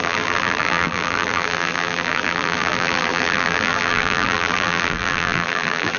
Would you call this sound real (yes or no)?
no